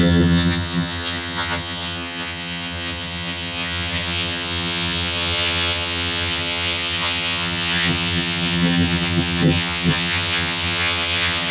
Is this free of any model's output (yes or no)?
no